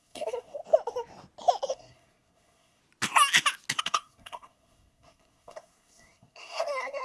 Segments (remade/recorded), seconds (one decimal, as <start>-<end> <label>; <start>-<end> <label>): 0.0-0.6 remade; 0.6-1.7 recorded; 1.7-2.8 remade; 2.8-3.8 recorded; 3.8-7.0 remade